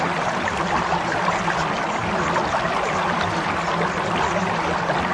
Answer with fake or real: real